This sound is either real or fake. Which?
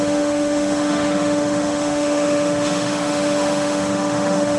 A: fake